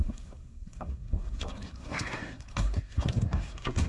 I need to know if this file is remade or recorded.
remade